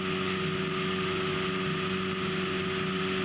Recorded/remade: recorded